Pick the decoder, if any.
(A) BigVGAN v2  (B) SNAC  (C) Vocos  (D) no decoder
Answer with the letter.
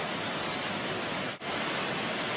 D